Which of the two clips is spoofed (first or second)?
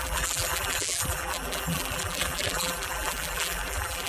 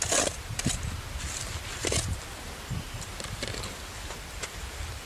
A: first